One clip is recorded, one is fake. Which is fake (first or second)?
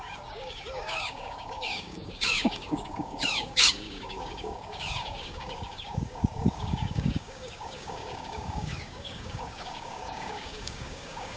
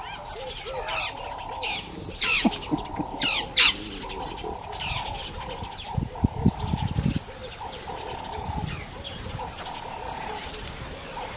first